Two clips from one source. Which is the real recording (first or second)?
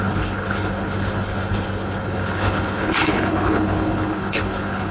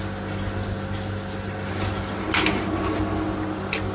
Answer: second